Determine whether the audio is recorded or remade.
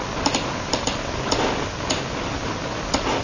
recorded